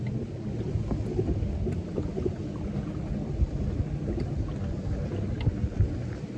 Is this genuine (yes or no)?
yes